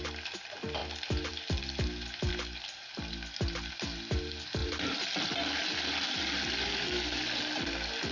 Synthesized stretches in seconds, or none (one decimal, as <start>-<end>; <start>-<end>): 0.8-1.3; 4.6-5.6